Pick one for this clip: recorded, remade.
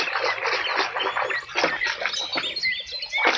recorded